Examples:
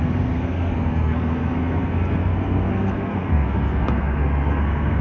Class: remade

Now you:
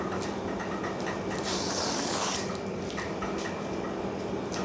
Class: recorded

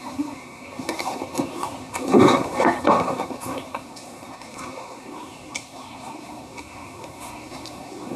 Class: remade